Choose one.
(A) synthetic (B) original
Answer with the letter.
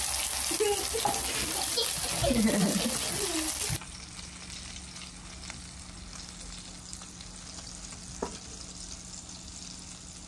B